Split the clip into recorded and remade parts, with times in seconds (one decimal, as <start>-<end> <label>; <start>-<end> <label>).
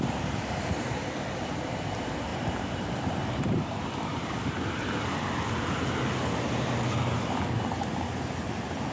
0.0-4.1 remade; 4.1-8.9 recorded